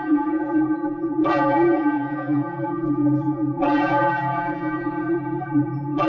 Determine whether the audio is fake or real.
fake